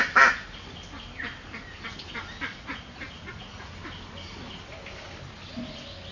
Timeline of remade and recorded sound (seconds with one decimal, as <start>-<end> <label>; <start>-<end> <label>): 0.0-2.5 recorded; 2.5-3.7 remade; 3.7-6.1 recorded

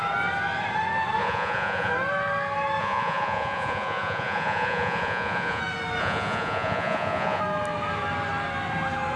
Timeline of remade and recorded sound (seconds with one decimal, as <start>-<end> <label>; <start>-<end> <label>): 0.0-1.2 recorded; 1.2-1.9 remade; 1.9-2.8 recorded; 2.8-5.6 remade; 5.6-6.0 recorded; 6.0-7.4 remade; 7.4-9.2 recorded

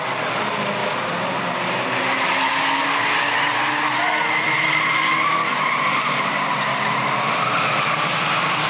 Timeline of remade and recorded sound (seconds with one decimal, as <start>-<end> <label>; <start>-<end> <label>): 0.0-8.7 recorded

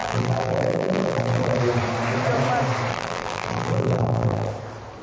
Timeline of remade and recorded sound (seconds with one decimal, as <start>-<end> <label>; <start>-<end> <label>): 0.0-1.6 remade; 1.6-2.9 recorded; 2.9-4.5 remade; 4.5-5.0 recorded

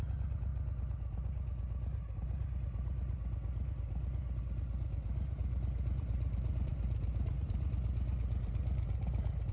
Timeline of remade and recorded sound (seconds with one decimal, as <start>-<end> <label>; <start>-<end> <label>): 0.0-5.4 recorded; 5.4-9.5 remade

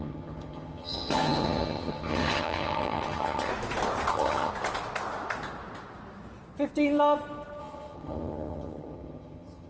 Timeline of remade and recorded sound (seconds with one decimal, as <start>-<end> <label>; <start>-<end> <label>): 0.0-3.5 remade; 3.5-4.1 recorded; 4.1-4.5 remade; 4.5-7.6 recorded; 7.6-9.7 remade